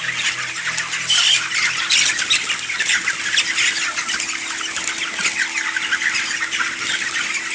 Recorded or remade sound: recorded